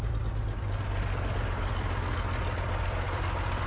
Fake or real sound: real